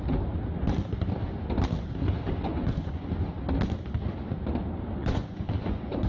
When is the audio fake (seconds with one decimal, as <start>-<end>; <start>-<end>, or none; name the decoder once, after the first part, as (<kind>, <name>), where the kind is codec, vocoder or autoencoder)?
2.5-3.1 (vocoder, Vocos); 5.0-6.1